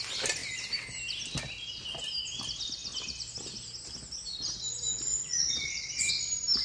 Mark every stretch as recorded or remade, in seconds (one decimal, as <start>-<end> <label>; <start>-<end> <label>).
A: 0.0-5.1 recorded; 5.1-6.1 remade; 6.1-6.6 recorded